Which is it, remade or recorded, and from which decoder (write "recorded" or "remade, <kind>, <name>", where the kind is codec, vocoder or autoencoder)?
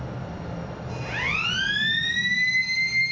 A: recorded